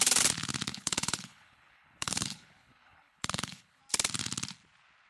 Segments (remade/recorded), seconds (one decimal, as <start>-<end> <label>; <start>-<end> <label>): 0.0-0.7 recorded; 0.7-3.8 remade; 3.8-5.1 recorded